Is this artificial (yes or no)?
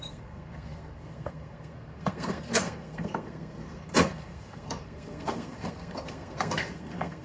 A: yes